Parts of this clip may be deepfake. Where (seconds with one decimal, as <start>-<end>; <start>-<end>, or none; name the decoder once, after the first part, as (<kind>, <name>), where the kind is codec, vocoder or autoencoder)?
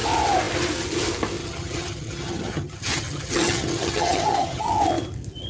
1.4-4.7 (vocoder, HiFi-GAN)